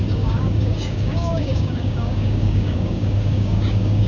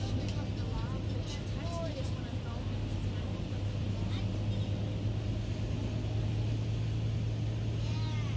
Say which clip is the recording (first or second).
second